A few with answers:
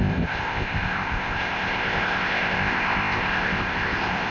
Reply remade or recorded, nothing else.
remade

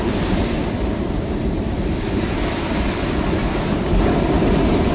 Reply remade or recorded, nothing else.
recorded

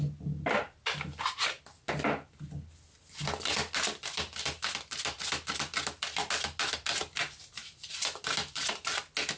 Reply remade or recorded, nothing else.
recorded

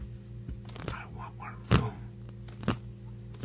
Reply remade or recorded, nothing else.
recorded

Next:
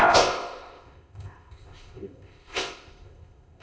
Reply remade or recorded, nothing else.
remade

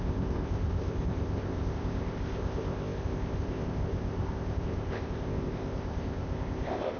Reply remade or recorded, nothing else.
remade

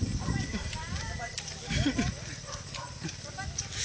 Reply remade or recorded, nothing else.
recorded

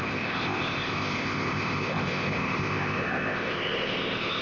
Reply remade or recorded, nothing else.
remade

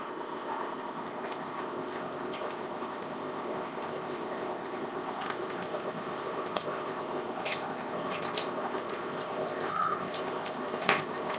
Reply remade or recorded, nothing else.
remade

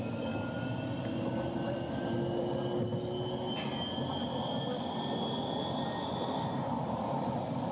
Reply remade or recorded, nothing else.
recorded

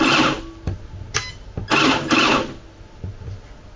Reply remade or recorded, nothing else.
recorded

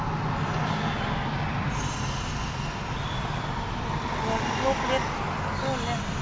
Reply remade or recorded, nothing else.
recorded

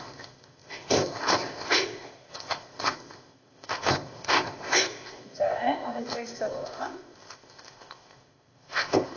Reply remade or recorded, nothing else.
remade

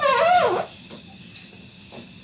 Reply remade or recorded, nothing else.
recorded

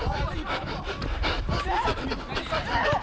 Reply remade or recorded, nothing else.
recorded